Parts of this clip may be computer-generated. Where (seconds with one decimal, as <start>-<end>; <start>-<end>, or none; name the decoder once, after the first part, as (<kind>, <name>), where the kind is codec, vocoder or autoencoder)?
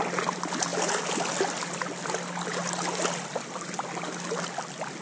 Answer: none